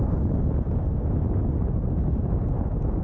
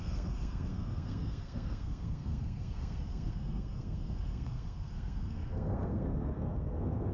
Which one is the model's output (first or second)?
second